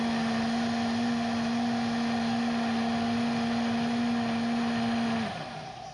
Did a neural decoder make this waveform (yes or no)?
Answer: no